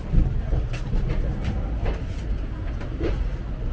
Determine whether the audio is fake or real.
real